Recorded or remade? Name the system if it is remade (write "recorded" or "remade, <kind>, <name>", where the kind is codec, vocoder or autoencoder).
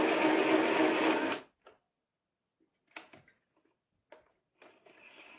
recorded